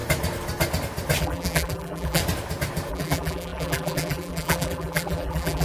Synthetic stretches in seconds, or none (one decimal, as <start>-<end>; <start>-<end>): 1.2-2.2; 2.9-5.6